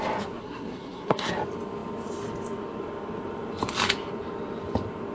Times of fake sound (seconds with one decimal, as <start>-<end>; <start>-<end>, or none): 0.4-1.3